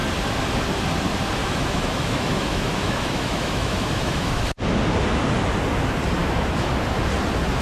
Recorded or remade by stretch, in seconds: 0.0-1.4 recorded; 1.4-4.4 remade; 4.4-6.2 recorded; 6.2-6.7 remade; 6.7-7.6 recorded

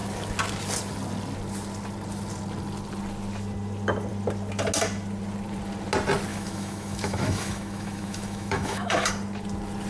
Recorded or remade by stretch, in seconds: 0.0-6.3 recorded; 6.3-9.1 remade; 9.1-9.9 recorded

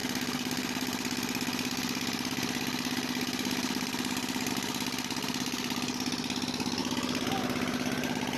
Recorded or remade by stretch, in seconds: 0.0-8.4 recorded

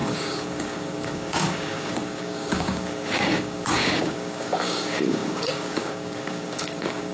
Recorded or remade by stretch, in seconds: 0.0-7.1 remade

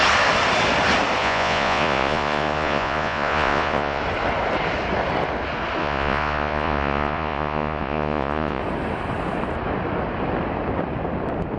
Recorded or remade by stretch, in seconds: 0.0-1.2 recorded; 1.2-4.0 remade; 4.0-5.8 recorded; 5.8-8.6 remade; 8.6-11.6 recorded

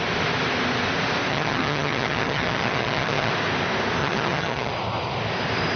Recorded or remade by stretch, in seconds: 0.0-1.3 recorded; 1.3-3.3 remade; 3.3-4.0 recorded; 4.0-4.7 remade; 4.7-5.8 recorded